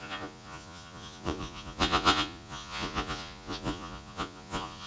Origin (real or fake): fake